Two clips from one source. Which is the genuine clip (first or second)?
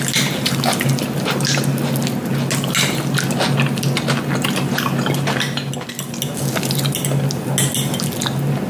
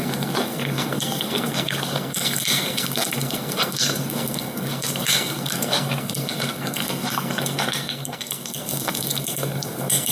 first